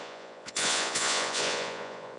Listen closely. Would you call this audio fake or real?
fake